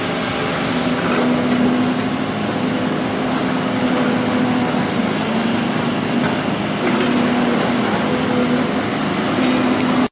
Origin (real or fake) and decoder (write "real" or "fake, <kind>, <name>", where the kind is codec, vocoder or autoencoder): real